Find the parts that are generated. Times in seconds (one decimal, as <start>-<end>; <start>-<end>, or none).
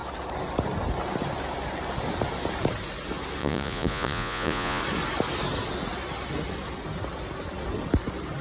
3.4-4.8